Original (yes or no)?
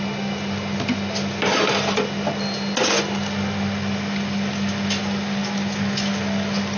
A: yes